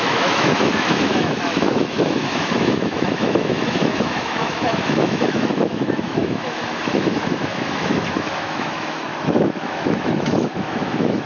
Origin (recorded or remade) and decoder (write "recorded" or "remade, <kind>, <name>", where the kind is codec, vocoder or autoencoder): remade, autoencoder, DAC-VAE